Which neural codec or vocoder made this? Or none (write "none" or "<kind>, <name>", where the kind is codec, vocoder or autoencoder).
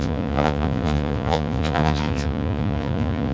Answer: vocoder, Vocos